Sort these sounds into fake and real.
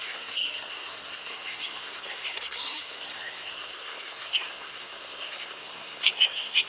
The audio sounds fake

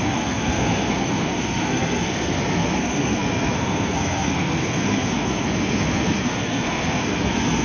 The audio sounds fake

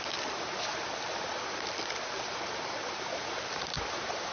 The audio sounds real